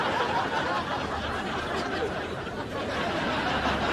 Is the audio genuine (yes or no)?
yes